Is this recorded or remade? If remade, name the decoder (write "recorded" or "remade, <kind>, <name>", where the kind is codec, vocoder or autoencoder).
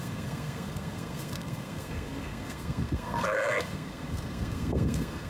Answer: remade, codec, SNAC